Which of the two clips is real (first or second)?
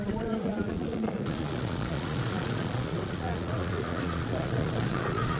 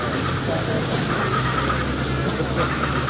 second